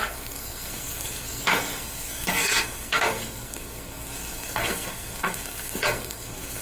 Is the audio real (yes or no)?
no